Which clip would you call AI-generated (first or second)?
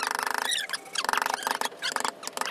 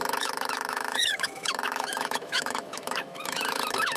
second